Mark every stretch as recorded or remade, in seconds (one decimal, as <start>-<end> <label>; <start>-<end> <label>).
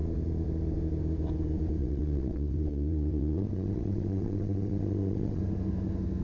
0.0-1.8 recorded; 1.8-5.4 remade; 5.4-6.2 recorded